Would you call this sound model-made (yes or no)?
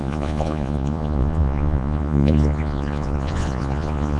yes